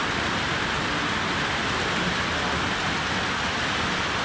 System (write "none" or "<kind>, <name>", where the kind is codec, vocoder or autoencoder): none